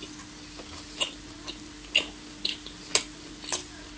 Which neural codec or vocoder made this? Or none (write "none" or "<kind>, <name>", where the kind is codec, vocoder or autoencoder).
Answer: none